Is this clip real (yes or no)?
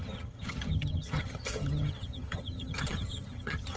no